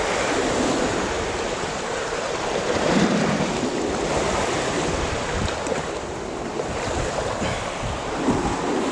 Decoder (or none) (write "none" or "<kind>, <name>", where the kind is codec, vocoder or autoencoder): vocoder, BigVGAN v2